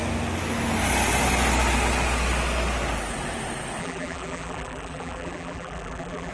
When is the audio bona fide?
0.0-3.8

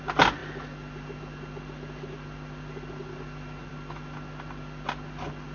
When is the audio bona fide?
0.0-5.5